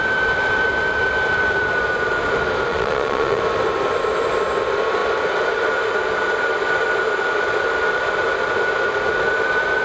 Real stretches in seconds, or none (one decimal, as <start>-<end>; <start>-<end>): 0.0-2.7; 3.4-9.8